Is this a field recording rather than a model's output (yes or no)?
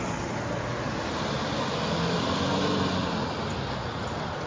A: yes